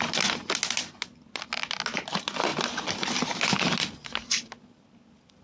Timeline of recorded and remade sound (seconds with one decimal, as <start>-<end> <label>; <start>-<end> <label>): 0.0-5.4 recorded